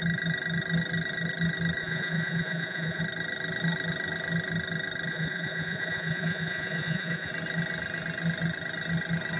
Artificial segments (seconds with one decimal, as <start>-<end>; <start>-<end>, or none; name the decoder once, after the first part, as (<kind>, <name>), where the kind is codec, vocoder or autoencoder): 1.8-3.0 (vocoder, Vocos); 5.1-7.3